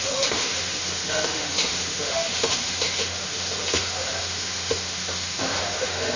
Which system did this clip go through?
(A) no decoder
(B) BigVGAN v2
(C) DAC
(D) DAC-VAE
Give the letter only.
D